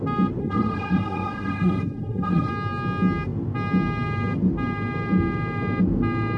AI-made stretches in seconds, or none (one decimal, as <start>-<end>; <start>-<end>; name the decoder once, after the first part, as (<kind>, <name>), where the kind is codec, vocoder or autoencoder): 0.4-2.5 (codec, SNAC)